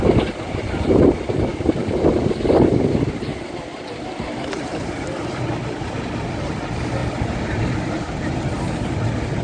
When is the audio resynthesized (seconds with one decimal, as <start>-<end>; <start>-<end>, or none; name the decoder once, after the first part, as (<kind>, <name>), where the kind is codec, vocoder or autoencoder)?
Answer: 0.0-1.5 (vocoder, BigVGAN v2); 2.7-7.0; 7.7-9.4